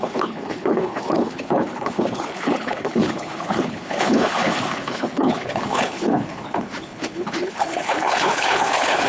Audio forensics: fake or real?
fake